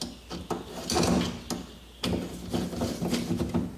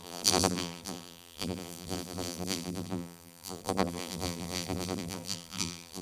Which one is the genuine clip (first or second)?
first